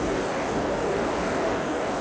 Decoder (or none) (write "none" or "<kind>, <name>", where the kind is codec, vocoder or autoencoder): codec, DAC